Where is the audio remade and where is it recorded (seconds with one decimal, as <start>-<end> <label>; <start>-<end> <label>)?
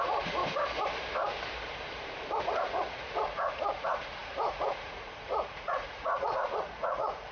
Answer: 0.0-0.4 remade; 0.4-2.4 recorded; 2.4-7.3 remade